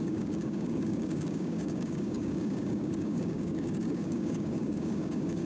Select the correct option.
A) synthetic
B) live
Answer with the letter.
A